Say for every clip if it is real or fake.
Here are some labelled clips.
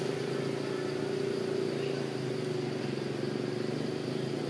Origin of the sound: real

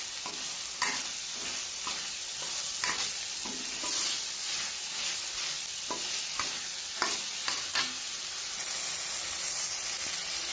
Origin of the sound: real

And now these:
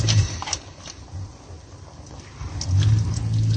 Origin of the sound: real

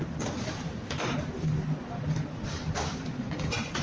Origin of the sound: real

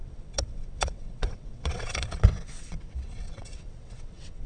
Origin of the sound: fake